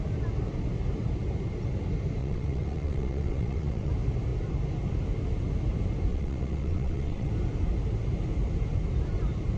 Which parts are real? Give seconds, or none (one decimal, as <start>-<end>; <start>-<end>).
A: 0.0-2.2; 3.9-6.1; 7.3-9.6